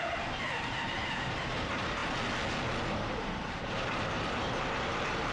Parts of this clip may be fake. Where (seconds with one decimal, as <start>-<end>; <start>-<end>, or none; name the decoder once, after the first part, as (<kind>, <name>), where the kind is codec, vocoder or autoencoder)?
0.0-2.0 (vocoder, BigVGAN v2); 2.8-5.3